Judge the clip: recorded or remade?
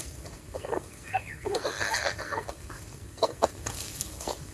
remade